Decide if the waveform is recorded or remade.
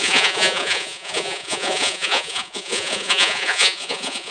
remade